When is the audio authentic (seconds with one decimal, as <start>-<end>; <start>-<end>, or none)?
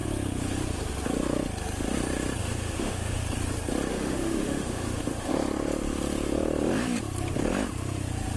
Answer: 0.0-2.4; 3.2-3.9; 5.3-8.4